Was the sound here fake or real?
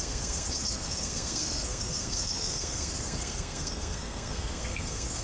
fake